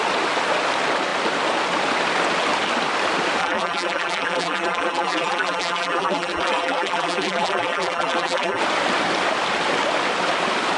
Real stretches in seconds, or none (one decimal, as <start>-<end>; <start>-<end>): 0.0-3.4; 8.6-10.8